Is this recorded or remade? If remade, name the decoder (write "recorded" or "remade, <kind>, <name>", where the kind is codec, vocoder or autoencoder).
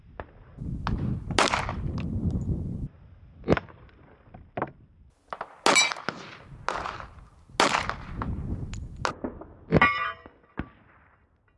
recorded